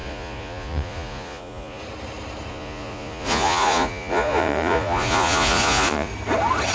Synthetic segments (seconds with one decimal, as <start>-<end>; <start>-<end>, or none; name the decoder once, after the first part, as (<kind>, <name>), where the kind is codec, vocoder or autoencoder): 0.0-1.8 (vocoder, Vocos); 2.5-6.1